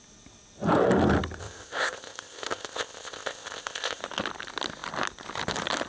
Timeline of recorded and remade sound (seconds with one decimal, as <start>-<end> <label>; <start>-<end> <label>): 0.0-1.4 recorded; 1.4-4.0 remade; 4.0-5.9 recorded